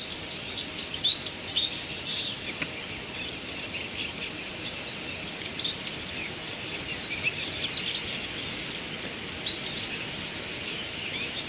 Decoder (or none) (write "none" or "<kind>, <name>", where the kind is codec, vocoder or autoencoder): none